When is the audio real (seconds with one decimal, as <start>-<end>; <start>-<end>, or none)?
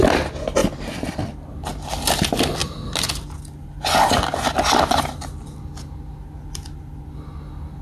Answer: 0.0-7.8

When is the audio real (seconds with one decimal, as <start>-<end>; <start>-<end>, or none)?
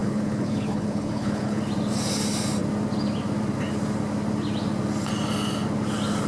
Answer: 1.6-6.3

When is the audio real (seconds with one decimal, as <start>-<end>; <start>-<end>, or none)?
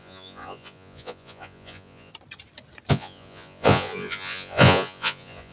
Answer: 2.1-2.9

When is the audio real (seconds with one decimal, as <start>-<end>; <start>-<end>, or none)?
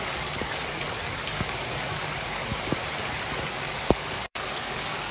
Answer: 2.5-3.5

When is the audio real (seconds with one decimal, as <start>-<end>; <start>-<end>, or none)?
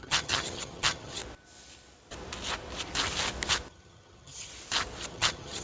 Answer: 1.2-3.7; 4.5-5.1